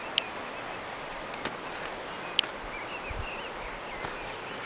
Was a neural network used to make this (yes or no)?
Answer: no